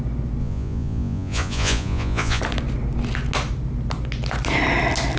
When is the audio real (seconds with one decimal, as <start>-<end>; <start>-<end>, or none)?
0.0-0.4; 2.4-5.2